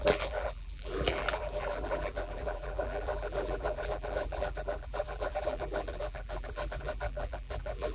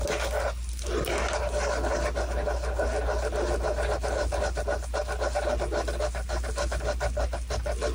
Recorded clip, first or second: second